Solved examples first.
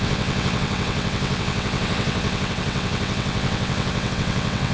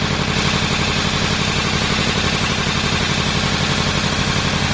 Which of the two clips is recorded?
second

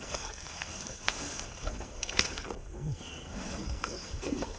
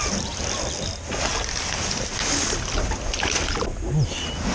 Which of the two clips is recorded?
second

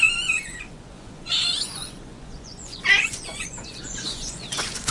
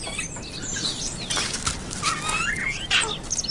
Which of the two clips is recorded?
second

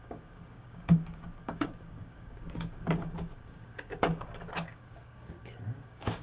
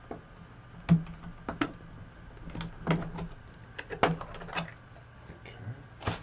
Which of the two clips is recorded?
second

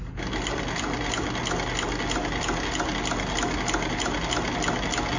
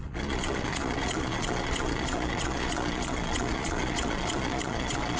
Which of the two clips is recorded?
first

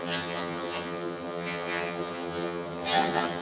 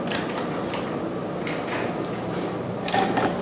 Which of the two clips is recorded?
second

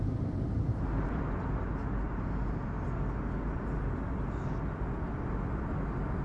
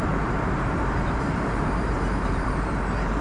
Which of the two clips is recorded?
first